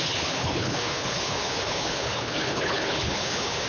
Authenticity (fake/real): fake